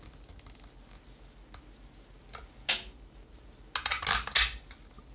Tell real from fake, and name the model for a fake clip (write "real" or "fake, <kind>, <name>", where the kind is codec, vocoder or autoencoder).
real